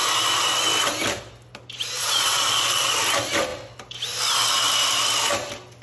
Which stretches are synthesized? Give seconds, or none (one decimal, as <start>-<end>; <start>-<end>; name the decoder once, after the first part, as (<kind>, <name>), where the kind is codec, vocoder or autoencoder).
2.0-2.9 (vocoder, Vocos)